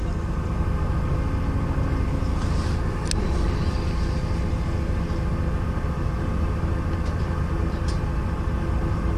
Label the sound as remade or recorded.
recorded